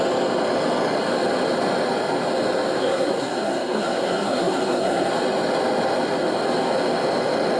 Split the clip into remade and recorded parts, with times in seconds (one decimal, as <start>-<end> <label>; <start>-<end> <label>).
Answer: 0.0-2.8 recorded; 2.8-5.1 remade; 5.1-7.6 recorded